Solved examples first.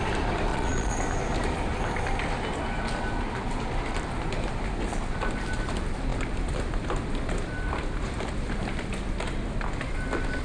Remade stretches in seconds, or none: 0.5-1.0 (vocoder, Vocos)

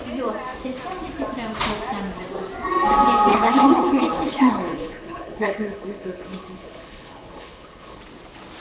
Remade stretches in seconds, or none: 3.3-8.0 (codec, HILCodec)

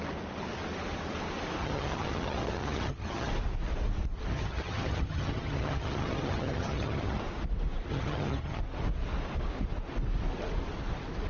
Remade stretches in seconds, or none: 1.6-3.3 (vocoder, HiFi-GAN); 4.3-7.2; 7.9-8.6

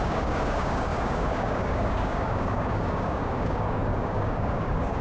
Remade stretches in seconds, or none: 0.0-5.0 (codec, DAC)

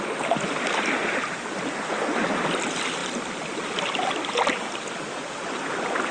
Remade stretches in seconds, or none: none

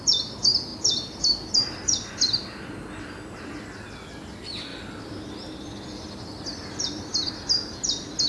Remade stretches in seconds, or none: none

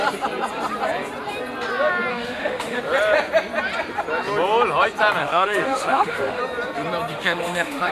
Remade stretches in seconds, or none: 2.1-2.8 (autoencoder, DAC-VAE); 5.2-6.4; 7.1-7.9

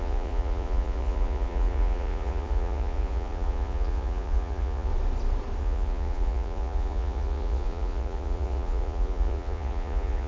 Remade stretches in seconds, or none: 0.0-4.9 (vocoder, Vocos); 5.6-10.3